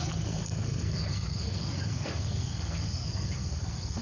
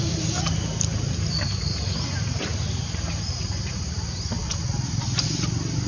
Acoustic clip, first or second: second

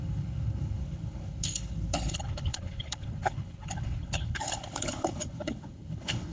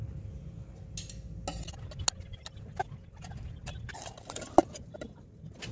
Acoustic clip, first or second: second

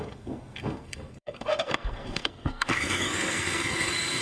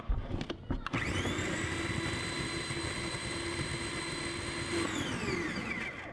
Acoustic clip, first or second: second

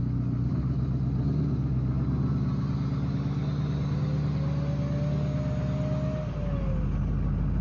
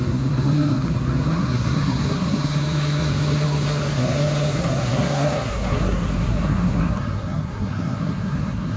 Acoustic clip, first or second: first